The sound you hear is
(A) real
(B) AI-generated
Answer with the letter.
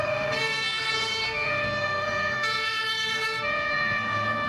B